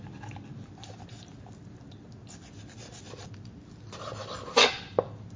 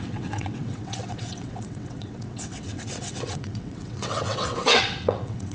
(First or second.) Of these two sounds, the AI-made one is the second